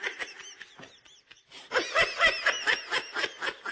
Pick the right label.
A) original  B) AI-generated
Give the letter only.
A